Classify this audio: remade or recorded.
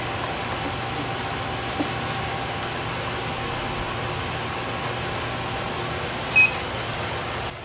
recorded